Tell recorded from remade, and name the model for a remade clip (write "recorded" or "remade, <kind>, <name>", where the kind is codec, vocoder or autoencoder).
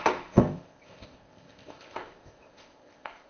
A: remade, codec, ZipCodec